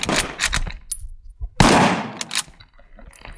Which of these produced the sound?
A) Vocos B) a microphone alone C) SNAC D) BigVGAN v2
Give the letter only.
B